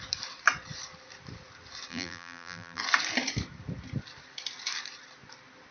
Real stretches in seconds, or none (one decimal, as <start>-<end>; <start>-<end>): 0.0-1.9; 2.8-5.7